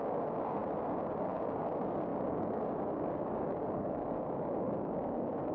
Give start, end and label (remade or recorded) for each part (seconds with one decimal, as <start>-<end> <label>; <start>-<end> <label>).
0.0-0.6 remade; 0.6-1.2 recorded; 1.2-5.5 remade